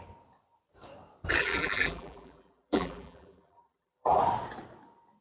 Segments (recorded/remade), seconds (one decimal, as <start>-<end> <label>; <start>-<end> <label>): 0.0-1.4 recorded; 1.4-4.2 remade; 4.2-5.2 recorded